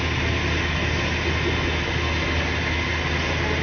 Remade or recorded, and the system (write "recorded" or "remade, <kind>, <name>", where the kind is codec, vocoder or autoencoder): recorded